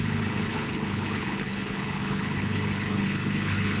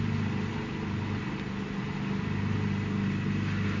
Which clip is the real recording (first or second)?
second